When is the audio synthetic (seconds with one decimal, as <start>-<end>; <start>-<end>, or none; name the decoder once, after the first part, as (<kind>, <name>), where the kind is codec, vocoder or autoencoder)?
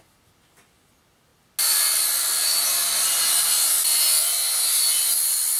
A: none